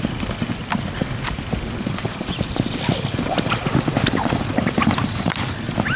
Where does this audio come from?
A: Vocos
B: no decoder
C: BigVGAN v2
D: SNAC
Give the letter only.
B